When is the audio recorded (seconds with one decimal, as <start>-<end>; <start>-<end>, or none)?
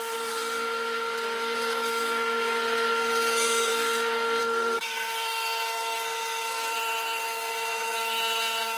none